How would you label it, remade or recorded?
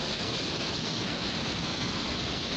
remade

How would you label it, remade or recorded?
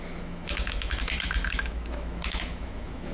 remade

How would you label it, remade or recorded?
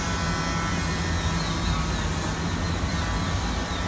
recorded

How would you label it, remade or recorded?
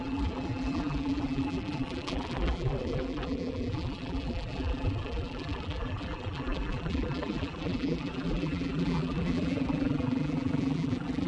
remade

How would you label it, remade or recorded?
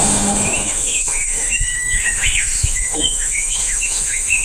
remade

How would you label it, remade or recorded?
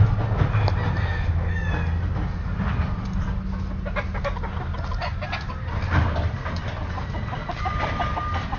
recorded